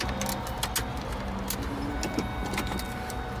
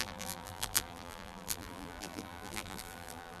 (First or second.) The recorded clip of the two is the first